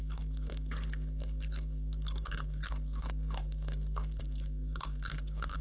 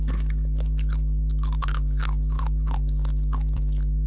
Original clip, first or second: second